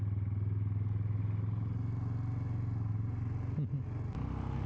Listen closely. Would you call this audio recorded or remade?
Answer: recorded